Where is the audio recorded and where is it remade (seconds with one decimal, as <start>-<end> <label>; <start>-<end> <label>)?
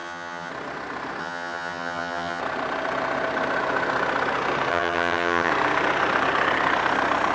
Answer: 0.0-0.5 remade; 0.5-1.2 recorded; 1.2-2.4 remade; 2.4-4.7 recorded; 4.7-5.5 remade; 5.5-7.3 recorded